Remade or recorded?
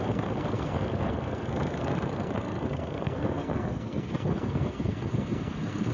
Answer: remade